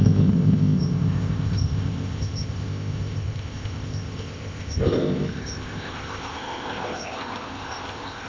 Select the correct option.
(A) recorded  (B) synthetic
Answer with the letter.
B